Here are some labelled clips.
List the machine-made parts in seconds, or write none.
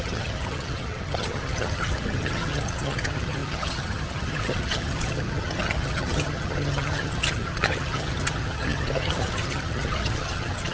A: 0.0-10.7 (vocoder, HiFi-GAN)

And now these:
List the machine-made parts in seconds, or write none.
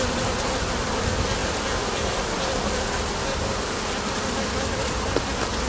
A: none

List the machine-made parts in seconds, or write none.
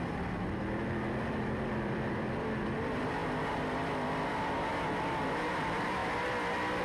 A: 0.0-6.0 (vocoder, BigVGAN v2)